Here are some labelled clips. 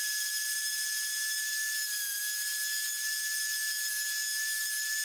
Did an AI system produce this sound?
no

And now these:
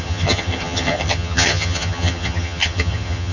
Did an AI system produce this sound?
yes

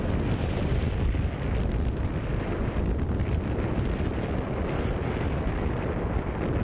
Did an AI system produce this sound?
no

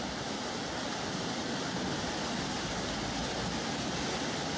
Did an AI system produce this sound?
no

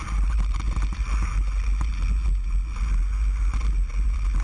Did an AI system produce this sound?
no